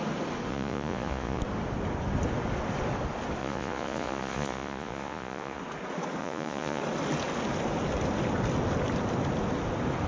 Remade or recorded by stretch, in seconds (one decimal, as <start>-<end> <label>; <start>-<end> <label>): 0.0-0.5 recorded; 0.5-1.4 remade; 1.4-3.4 recorded; 3.4-5.6 remade; 5.6-6.2 recorded; 6.2-6.8 remade; 6.8-10.1 recorded